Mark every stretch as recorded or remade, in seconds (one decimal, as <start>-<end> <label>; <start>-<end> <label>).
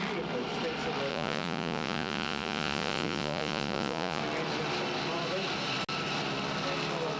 0.0-1.1 recorded; 1.1-4.2 remade; 4.2-7.2 recorded